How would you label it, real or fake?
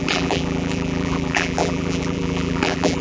fake